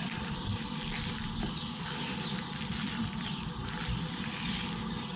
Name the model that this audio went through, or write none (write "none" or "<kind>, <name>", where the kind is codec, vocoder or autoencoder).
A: none